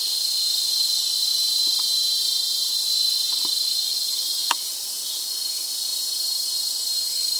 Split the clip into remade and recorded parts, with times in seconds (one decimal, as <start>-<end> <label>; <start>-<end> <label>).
0.0-7.4 recorded

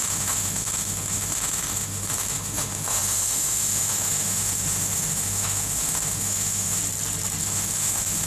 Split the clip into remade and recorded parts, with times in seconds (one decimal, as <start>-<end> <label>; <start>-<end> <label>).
0.0-6.8 remade; 6.8-7.4 recorded; 7.4-8.3 remade